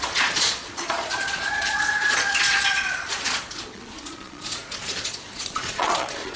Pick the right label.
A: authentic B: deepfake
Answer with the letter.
B